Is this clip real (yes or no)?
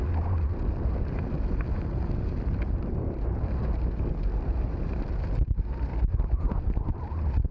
yes